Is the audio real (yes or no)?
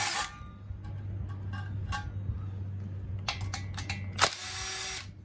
yes